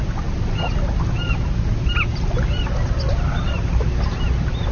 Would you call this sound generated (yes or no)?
no